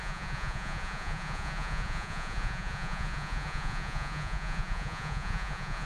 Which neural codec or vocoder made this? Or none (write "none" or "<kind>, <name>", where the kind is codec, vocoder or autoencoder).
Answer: vocoder, Vocos